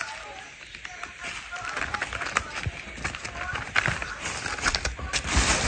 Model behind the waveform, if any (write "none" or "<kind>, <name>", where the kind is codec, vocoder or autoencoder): none